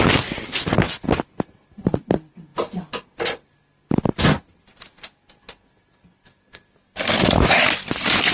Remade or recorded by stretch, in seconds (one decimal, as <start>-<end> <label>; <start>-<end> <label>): 0.0-8.3 recorded